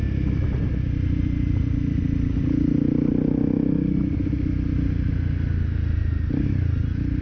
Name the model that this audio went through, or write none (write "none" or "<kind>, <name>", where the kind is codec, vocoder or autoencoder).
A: none